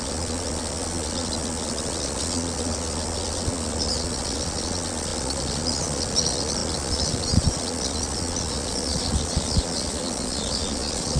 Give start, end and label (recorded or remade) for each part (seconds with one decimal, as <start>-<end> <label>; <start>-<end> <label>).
0.0-11.2 remade